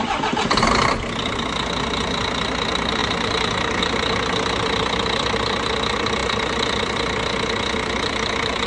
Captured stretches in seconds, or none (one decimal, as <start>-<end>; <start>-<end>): 0.0-8.7